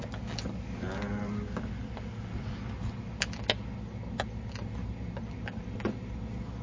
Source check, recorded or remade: recorded